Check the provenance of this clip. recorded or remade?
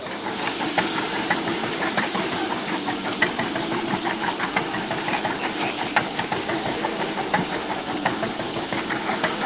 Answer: remade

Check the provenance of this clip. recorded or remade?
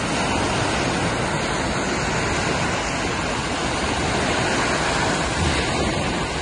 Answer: recorded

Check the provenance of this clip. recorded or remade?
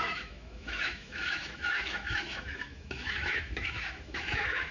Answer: remade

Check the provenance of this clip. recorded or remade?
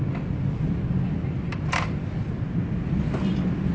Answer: recorded